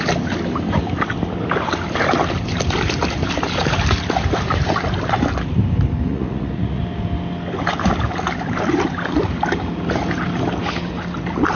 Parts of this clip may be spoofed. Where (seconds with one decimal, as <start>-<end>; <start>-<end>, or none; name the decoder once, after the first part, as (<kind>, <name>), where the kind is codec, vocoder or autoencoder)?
6.1-6.8 (vocoder, Vocos)